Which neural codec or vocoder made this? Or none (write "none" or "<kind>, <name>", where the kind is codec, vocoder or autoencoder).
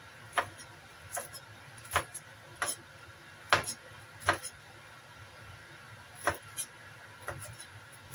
none